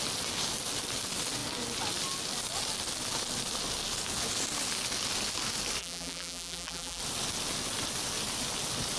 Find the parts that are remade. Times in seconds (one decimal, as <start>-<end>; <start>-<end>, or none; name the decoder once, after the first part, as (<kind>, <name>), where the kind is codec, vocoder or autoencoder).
5.8-7.0 (vocoder, BigVGAN v2)